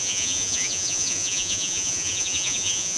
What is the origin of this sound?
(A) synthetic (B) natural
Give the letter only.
A